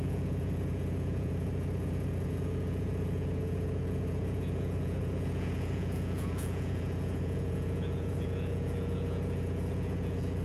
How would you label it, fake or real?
fake